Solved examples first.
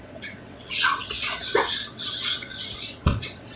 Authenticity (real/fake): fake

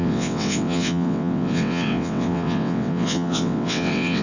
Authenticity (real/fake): fake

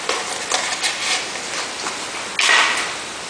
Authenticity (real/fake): real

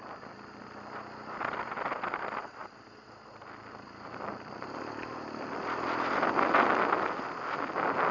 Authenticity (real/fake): real